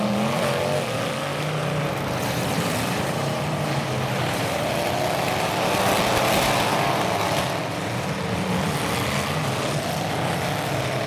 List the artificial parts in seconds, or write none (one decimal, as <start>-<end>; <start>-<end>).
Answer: 1.3-4.7